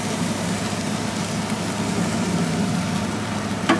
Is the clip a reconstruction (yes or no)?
no